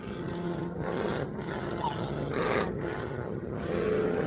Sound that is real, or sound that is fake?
fake